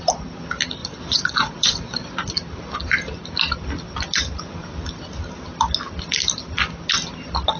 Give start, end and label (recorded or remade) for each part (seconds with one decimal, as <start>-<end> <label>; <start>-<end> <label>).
0.0-0.8 recorded; 0.8-2.3 remade; 2.3-7.6 recorded